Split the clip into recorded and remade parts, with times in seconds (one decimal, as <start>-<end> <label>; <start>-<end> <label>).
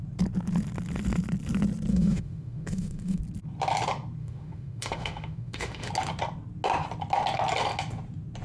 0.0-1.9 recorded; 1.9-3.2 remade; 3.2-4.2 recorded; 4.2-5.9 remade; 5.9-8.4 recorded